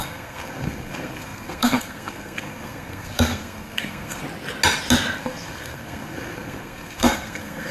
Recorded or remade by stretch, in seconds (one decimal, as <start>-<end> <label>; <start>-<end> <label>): 0.0-4.2 remade; 4.2-5.2 recorded; 5.2-7.7 remade